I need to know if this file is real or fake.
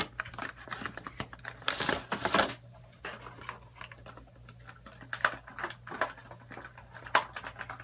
real